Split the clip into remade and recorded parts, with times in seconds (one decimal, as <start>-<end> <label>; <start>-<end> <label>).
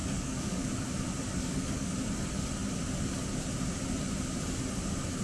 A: 0.0-0.7 remade; 0.7-1.3 recorded; 1.3-1.9 remade; 1.9-5.2 recorded